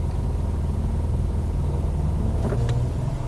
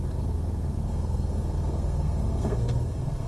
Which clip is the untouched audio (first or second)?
first